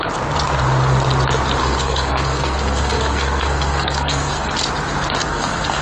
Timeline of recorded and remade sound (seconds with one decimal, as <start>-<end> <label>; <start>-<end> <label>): 0.0-1.6 recorded; 1.6-4.5 remade; 4.5-5.2 recorded; 5.2-5.8 remade